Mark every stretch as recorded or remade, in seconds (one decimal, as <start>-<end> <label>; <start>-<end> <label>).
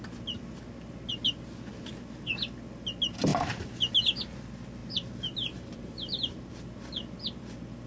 0.0-4.8 recorded; 4.8-6.5 remade; 6.5-7.9 recorded